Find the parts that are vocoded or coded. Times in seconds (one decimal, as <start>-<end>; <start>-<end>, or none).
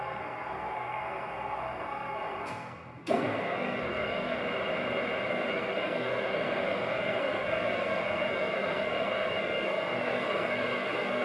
0.0-4.4; 5.3-11.2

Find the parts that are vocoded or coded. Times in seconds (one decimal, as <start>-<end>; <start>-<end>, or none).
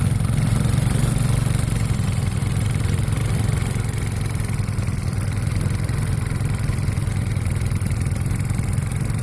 none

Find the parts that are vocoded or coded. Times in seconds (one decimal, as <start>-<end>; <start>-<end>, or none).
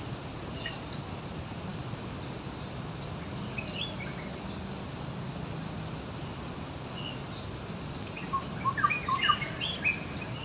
none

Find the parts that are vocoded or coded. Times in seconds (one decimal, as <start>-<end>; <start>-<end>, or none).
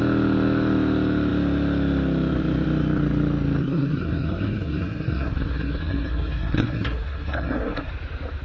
3.6-7.9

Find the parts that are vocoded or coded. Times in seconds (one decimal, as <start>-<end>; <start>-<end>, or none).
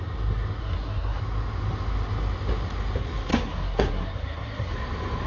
0.6-1.2; 3.3-4.7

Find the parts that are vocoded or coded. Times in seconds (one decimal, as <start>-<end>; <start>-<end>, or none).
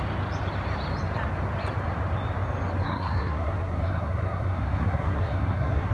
2.8-5.9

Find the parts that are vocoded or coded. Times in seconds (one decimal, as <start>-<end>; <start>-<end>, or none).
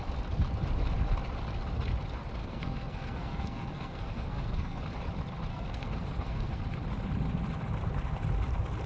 2.4-4.8; 5.5-6.6